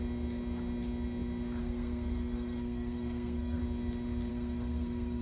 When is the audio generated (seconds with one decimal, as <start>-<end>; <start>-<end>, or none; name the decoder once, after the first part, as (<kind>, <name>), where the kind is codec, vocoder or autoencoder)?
1.6-3.6 (codec, SNAC); 4.3-5.2